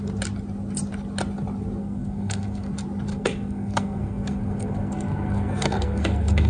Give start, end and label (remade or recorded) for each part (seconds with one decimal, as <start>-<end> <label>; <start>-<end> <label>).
0.0-1.8 recorded; 1.8-2.7 remade; 2.7-3.1 recorded; 3.1-6.5 remade